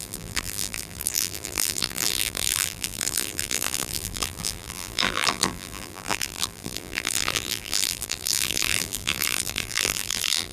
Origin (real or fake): fake